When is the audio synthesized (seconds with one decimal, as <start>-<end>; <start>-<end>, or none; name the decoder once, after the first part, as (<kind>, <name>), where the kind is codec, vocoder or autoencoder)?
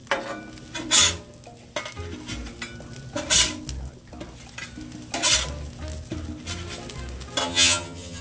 7.4-8.2 (vocoder, HiFi-GAN)